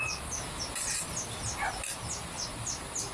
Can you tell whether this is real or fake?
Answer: real